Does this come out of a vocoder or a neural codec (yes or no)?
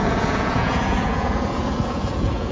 yes